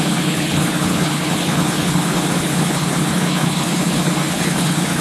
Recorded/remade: remade